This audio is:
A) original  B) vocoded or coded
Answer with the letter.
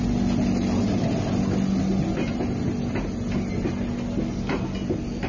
A